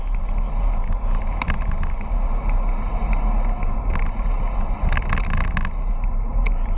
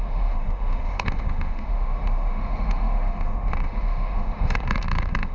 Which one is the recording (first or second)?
first